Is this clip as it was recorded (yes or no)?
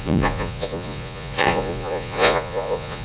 no